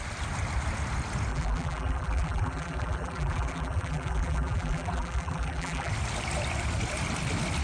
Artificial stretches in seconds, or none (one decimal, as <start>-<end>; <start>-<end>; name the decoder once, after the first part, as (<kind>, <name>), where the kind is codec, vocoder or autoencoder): 1.3-5.9 (vocoder, BigVGAN v2)